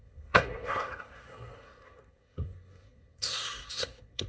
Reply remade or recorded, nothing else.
remade